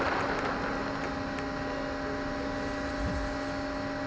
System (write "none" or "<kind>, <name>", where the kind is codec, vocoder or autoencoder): none